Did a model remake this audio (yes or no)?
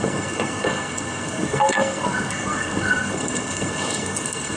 yes